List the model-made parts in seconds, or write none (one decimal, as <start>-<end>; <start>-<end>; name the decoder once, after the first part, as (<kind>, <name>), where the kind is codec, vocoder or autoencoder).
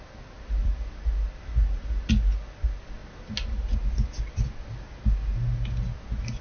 none